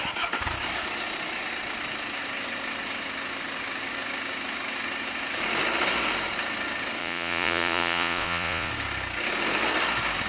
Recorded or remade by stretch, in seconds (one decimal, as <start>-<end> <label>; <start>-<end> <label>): 0.0-7.0 recorded; 7.0-8.7 remade; 8.7-10.3 recorded